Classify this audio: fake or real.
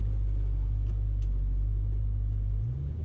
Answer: real